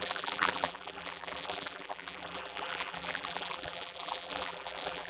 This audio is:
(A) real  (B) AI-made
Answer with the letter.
B